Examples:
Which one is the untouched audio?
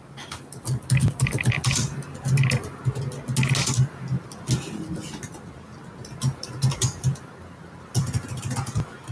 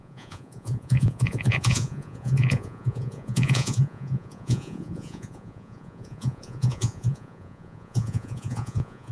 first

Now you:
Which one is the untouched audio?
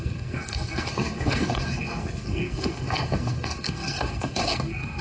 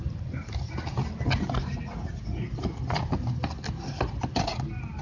second